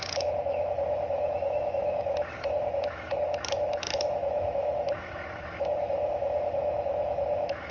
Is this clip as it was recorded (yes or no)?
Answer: no